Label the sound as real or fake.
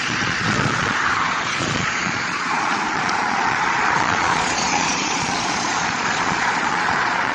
fake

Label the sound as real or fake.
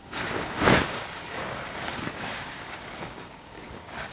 fake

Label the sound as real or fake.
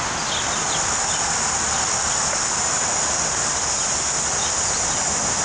real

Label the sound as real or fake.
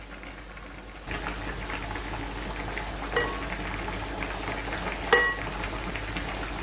real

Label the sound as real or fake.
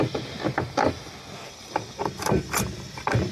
real